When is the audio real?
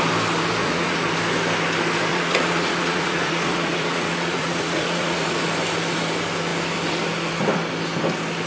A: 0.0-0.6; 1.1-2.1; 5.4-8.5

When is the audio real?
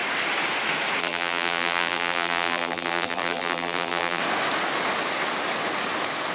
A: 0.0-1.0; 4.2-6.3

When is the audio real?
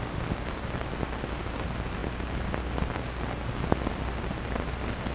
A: 0.0-5.1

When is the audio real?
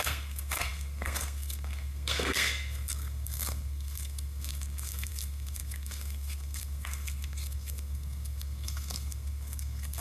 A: none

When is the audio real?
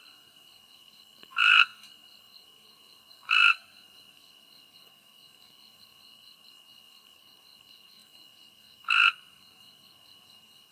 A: none